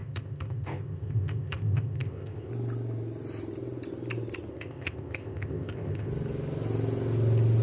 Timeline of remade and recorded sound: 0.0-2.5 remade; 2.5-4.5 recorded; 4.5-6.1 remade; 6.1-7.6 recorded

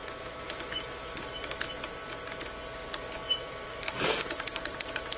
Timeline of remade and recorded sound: 0.0-1.1 remade; 1.1-5.2 recorded

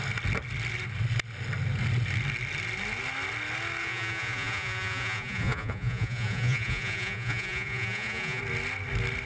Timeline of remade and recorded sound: 0.0-3.8 recorded; 3.8-8.4 remade; 8.4-9.3 recorded

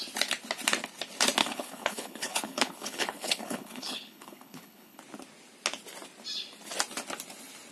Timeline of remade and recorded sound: 0.0-1.4 recorded; 1.4-5.0 remade; 5.0-7.7 recorded

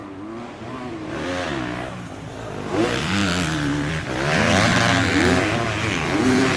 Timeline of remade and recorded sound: 0.0-2.3 recorded; 2.3-3.2 remade; 3.2-3.9 recorded; 3.9-4.7 remade; 4.7-5.5 recorded; 5.5-6.6 remade

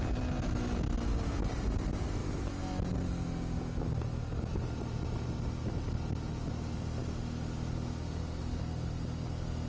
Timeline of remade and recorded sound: 0.0-9.7 recorded

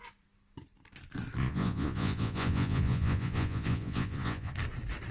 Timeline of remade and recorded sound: 0.0-1.4 recorded; 1.4-4.5 remade; 4.5-5.1 recorded

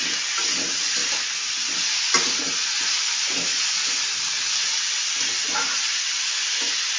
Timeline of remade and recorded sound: 0.0-7.0 recorded